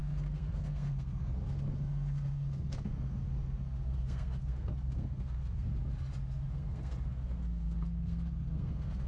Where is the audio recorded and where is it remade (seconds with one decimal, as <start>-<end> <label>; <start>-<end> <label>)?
0.0-5.7 remade; 5.7-6.5 recorded; 6.5-9.1 remade